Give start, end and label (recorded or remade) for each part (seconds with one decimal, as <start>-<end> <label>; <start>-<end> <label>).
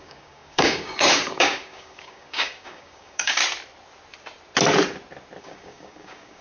0.0-3.4 remade; 3.4-5.4 recorded; 5.4-6.4 remade